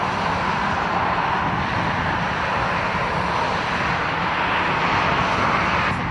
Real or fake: fake